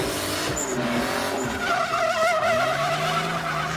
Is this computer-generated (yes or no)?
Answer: no